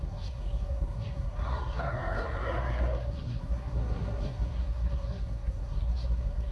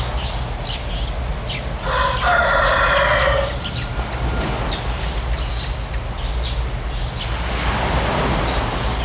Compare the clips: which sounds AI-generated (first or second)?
first